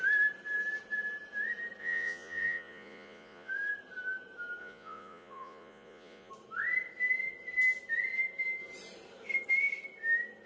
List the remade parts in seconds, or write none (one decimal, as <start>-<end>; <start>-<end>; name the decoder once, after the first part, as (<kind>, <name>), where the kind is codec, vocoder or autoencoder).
1.8-3.5 (vocoder, Vocos); 4.6-6.3

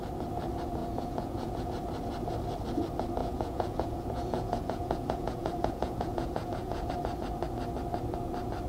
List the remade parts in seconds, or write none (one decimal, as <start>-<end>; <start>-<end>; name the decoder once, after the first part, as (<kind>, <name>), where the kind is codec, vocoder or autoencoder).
0.8-1.7 (vocoder, Vocos); 3.2-6.9

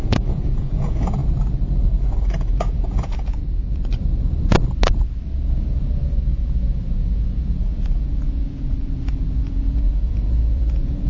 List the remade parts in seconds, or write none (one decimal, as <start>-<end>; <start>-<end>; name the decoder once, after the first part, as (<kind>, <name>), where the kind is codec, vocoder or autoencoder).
0.0-1.2 (vocoder, Vocos); 2.4-3.4; 5.5-11.1